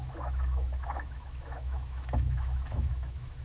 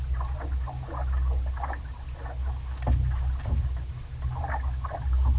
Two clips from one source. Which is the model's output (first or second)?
first